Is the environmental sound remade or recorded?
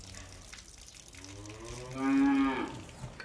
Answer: recorded